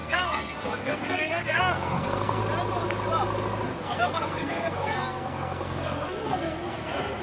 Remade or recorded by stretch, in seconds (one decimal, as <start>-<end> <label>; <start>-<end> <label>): 0.0-2.4 remade; 2.4-3.8 recorded; 3.8-7.2 remade